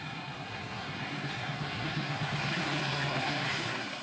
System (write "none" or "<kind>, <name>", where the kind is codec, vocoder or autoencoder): codec, SNAC